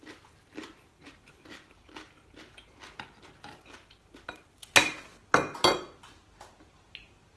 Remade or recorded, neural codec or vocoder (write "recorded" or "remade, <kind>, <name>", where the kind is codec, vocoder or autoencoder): recorded